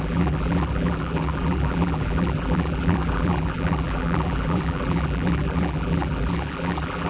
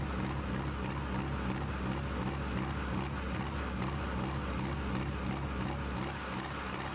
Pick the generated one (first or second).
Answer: first